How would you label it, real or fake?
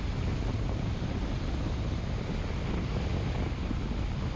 real